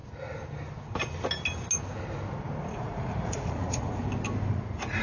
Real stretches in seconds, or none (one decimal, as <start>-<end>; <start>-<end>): 0.0-2.7; 4.0-4.5